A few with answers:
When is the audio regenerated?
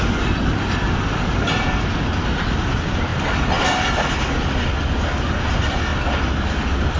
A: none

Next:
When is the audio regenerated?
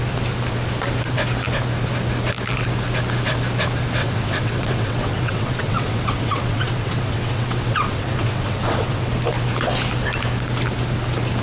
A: 4.0-9.1 (vocoder, WaveNeXt)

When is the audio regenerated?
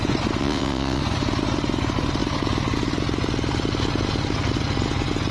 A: 0.4-1.0 (vocoder, WaveNeXt)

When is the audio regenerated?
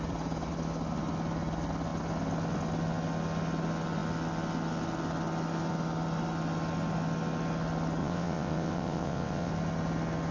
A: 8.0-9.5 (vocoder, WaveNeXt)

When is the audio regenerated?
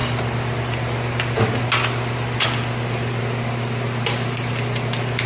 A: none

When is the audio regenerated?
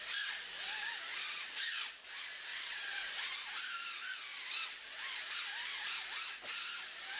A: 1.1-1.9 (vocoder, WaveNeXt); 2.5-3.2; 4.3-4.8